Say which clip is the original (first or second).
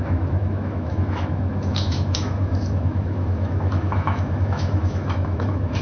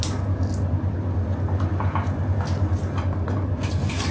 second